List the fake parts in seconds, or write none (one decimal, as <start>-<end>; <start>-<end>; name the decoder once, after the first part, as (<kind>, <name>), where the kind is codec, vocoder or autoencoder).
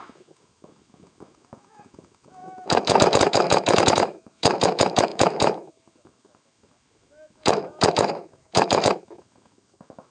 0.0-10.1 (autoencoder, DAC-VAE)